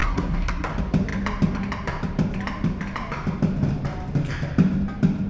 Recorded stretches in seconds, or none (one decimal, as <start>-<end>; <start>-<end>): 0.7-5.3